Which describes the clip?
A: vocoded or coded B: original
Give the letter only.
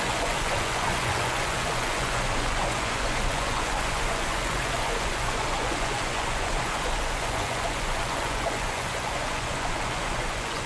A